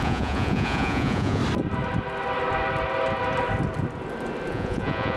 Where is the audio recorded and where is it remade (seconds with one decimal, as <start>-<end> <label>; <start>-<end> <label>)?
0.0-1.4 remade; 1.4-4.5 recorded; 4.5-5.2 remade